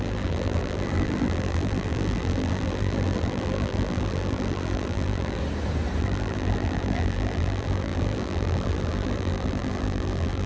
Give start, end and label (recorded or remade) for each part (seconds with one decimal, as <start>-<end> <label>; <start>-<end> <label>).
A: 0.0-5.4 remade; 5.4-6.0 recorded; 6.0-10.5 remade